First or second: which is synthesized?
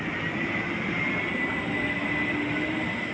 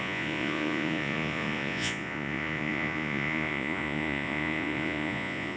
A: second